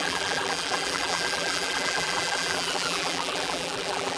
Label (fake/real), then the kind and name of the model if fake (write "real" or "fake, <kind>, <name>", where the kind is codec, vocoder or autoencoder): fake, vocoder, BigVGAN v2